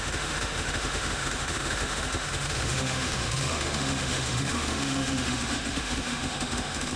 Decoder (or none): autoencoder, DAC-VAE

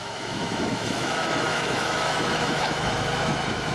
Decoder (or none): autoencoder, DAC-VAE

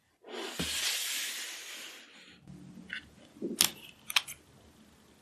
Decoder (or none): none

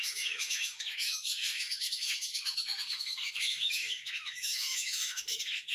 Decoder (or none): autoencoder, DAC-VAE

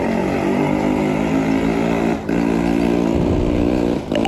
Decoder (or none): none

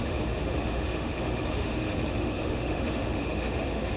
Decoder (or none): autoencoder, DAC-VAE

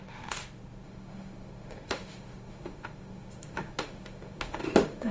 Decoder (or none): autoencoder, DAC-VAE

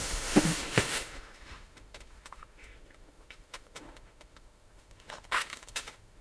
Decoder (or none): autoencoder, DAC-VAE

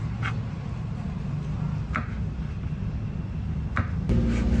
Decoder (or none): none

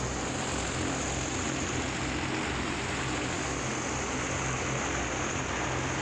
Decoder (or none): none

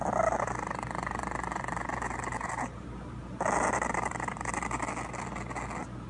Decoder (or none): none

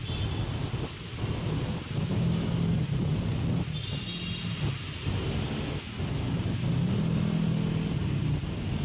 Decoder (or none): none